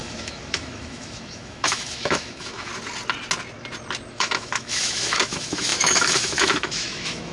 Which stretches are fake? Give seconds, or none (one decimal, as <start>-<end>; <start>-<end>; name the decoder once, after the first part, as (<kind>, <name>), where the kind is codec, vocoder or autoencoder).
0.0-2.7 (autoencoder, DAC-VAE); 4.1-7.3